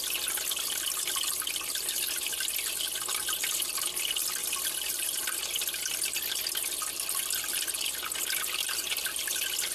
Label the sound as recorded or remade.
recorded